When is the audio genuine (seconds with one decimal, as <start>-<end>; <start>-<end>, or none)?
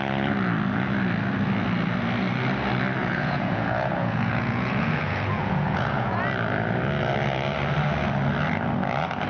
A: 0.0-3.0; 6.2-9.3